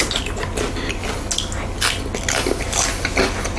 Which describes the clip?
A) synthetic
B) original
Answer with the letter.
B